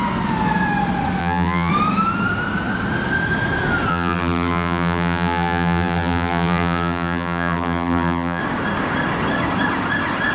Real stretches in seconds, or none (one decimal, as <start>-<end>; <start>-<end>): 0.0-1.2; 1.7-3.9; 8.4-10.3